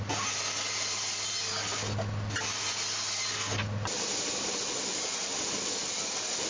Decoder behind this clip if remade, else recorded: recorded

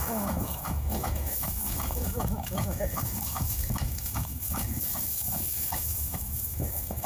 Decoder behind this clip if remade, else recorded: remade, autoencoder, DAC-VAE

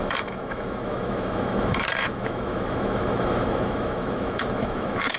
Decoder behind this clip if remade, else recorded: remade, autoencoder, DAC-VAE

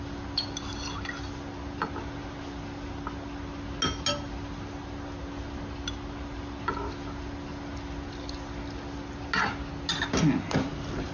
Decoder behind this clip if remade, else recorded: recorded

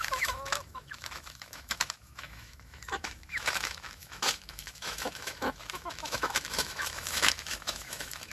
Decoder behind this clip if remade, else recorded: remade, autoencoder, DAC-VAE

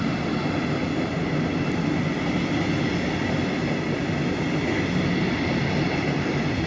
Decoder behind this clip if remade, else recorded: recorded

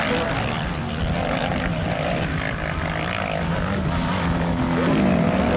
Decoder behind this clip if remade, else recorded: recorded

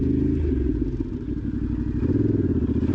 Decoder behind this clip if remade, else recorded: recorded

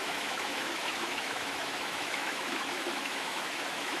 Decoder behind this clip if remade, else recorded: remade, autoencoder, DAC-VAE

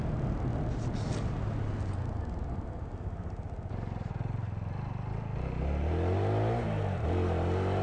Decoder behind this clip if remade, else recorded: recorded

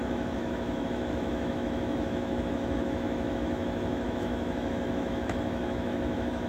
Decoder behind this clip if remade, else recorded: remade, autoencoder, DAC-VAE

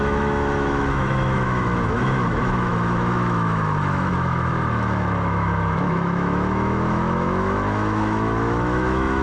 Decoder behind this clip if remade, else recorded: remade, autoencoder, DAC-VAE